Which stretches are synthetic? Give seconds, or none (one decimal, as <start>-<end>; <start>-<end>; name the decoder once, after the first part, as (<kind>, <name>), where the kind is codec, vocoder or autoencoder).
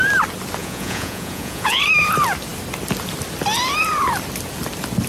0.6-1.8 (vocoder, Vocos)